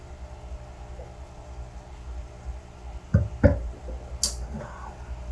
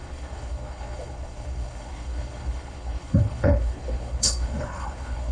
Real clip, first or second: first